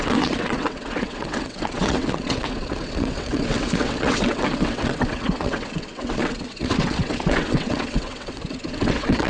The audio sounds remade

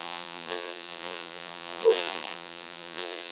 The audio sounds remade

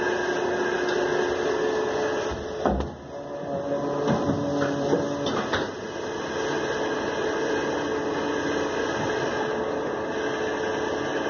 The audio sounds recorded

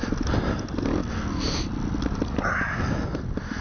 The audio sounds recorded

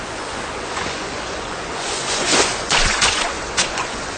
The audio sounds remade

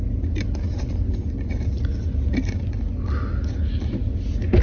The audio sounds recorded